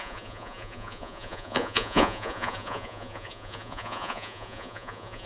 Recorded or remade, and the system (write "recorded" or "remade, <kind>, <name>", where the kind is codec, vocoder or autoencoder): remade, vocoder, Vocos